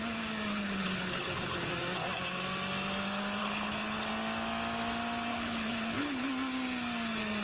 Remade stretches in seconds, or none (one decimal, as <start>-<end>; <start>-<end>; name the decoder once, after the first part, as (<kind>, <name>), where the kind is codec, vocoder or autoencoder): 0.5-1.7 (codec, HILCodec); 3.4-4.1; 5.3-6.3